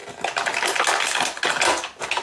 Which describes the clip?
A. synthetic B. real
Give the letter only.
B